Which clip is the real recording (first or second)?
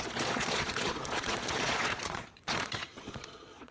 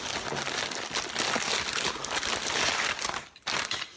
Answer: second